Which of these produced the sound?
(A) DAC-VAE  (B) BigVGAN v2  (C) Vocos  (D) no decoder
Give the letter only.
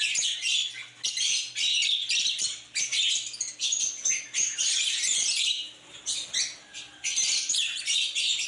D